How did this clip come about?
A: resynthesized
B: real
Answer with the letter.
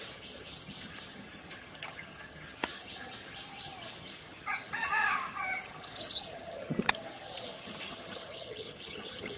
A